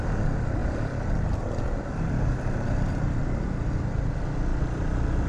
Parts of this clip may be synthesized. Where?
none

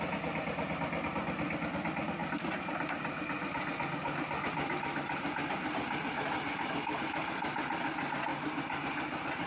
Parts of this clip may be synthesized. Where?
none

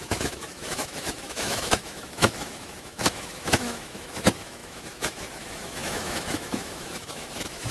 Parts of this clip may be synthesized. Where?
0.0-7.7 (autoencoder, DAC-VAE)